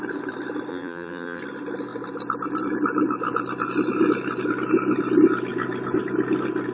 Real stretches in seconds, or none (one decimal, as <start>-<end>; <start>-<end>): 0.0-0.7; 1.4-6.7